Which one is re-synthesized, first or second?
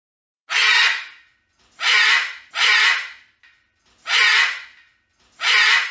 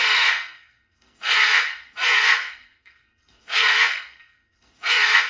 second